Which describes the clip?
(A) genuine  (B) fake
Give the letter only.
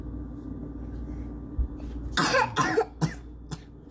A